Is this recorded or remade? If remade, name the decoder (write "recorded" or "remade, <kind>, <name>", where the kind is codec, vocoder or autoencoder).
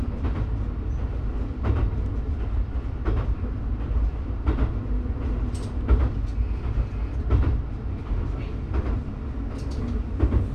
recorded